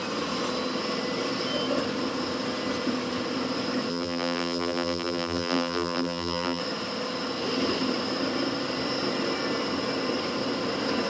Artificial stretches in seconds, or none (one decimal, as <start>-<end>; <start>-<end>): 3.9-6.6